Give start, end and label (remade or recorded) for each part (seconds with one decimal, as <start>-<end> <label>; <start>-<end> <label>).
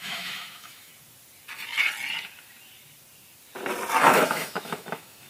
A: 0.0-0.9 remade; 0.9-4.0 recorded; 4.0-5.3 remade